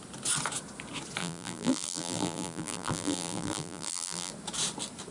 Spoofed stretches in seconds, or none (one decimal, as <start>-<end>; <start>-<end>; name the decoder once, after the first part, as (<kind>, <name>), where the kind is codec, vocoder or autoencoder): 1.2-4.3 (vocoder, BigVGAN v2)